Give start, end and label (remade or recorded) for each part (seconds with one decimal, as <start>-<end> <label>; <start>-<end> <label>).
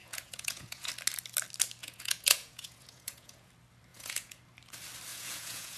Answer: 0.0-0.9 remade; 0.9-1.8 recorded; 1.8-3.5 remade; 3.5-3.9 recorded; 3.9-4.4 remade; 4.4-5.1 recorded; 5.1-5.8 remade